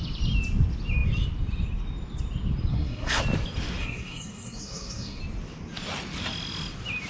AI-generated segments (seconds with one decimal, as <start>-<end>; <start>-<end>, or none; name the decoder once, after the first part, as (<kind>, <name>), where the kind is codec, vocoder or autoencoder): 2.7-3.2 (codec, SNAC); 3.8-5.2